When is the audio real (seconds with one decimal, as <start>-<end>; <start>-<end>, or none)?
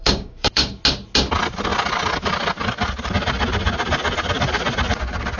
0.8-5.4